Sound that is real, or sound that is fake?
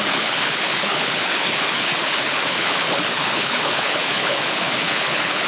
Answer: fake